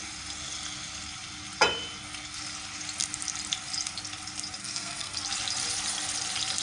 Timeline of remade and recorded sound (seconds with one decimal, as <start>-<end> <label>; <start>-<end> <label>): 0.0-4.6 recorded; 4.6-5.2 remade; 5.2-6.6 recorded